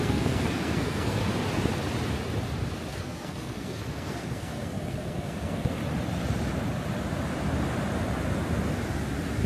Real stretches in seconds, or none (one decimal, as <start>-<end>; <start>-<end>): 1.2-2.9; 5.8-9.5